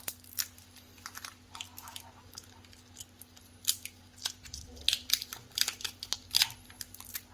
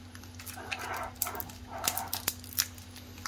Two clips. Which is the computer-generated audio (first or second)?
first